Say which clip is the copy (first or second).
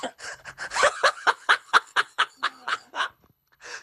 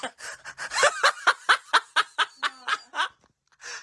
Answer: first